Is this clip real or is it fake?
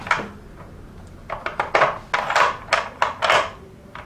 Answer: real